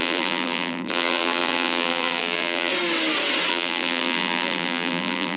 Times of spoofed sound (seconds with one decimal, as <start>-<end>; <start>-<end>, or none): 0.0-2.7; 3.5-5.4